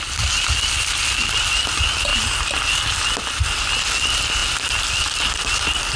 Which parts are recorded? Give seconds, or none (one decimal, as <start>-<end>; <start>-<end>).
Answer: 0.0-6.0